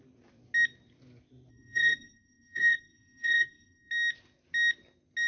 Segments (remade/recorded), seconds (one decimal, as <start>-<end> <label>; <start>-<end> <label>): 0.0-1.5 recorded; 1.5-3.9 remade; 3.9-5.3 recorded